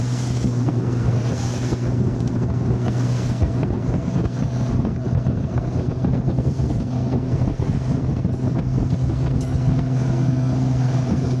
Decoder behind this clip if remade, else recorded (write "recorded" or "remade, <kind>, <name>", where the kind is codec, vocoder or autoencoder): remade, codec, SNAC